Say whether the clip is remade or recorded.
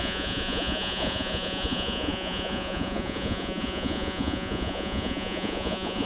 remade